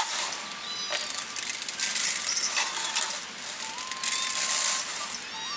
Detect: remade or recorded recorded